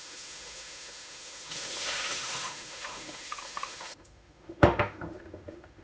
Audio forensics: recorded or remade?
remade